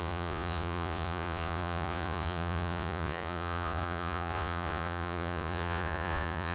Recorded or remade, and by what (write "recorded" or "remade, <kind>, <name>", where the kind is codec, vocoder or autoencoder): remade, vocoder, Vocos